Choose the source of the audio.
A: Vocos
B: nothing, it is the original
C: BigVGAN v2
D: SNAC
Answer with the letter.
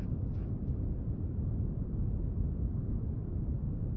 C